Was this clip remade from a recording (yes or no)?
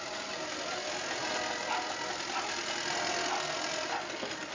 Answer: no